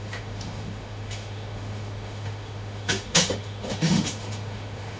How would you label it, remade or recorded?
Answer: remade